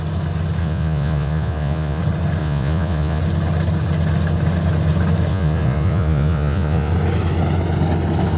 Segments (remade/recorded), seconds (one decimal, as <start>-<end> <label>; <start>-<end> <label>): 0.0-0.6 recorded; 0.6-2.0 remade; 2.0-2.4 recorded; 2.4-3.2 remade; 3.2-5.3 recorded; 5.3-6.9 remade; 6.9-8.4 recorded